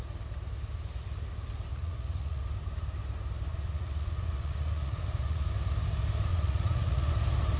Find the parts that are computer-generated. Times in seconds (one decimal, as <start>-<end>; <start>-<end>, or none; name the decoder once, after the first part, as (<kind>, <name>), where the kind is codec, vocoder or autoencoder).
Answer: 1.7-2.4 (vocoder, Vocos); 3.5-5.5; 6.3-7.1

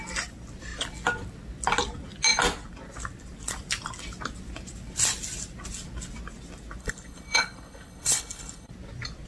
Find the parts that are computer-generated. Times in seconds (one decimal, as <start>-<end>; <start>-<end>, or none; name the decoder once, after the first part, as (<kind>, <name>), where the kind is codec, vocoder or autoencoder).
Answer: 6.8-8.7 (codec, HILCodec)

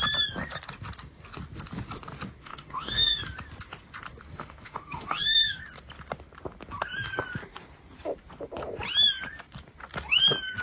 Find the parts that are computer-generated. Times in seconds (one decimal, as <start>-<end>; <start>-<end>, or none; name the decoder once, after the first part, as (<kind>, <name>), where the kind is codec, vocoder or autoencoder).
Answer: 2.4-3.2 (autoencoder, DAC-VAE); 4.3-5.6

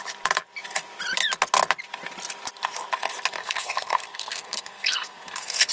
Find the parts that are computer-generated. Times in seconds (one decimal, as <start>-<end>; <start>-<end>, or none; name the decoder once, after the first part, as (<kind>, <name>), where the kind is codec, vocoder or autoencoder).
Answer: 3.4-5.7 (codec, SNAC)

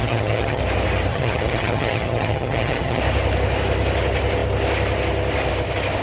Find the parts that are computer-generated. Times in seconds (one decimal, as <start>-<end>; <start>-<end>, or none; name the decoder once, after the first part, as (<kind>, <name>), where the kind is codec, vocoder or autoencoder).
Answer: 0.0-0.6 (vocoder, HiFi-GAN); 1.1-3.0

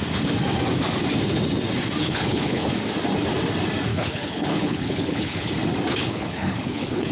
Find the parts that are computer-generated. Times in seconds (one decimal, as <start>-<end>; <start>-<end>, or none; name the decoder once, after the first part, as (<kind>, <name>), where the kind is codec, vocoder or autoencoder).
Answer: 2.0-2.7 (codec, HILCodec); 3.9-5.5; 5.9-7.1

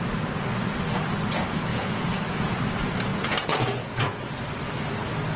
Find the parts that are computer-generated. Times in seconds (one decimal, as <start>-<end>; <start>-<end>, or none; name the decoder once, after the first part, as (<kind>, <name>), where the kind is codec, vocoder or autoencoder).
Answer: 1.7-2.6 (vocoder, Vocos); 3.1-4.4

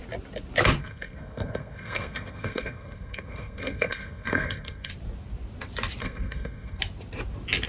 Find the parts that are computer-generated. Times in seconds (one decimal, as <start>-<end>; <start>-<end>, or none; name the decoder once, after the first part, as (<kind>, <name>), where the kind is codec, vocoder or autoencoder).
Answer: 0.8-4.9 (codec, SNAC); 6.0-6.8